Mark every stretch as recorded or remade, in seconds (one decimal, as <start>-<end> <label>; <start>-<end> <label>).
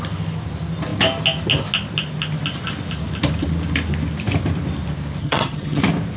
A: 0.0-5.2 recorded; 5.2-5.8 remade; 5.8-6.2 recorded